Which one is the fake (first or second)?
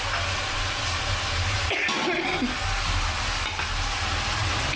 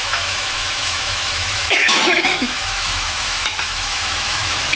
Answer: second